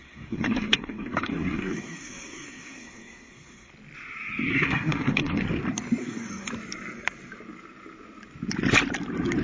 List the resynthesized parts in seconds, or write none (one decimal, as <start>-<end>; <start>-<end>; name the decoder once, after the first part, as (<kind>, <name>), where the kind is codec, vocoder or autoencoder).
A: 0.0-3.7 (codec, SNAC); 4.5-5.4; 6.0-6.5